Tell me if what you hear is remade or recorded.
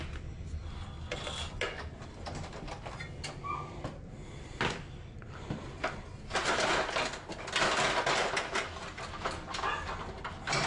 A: recorded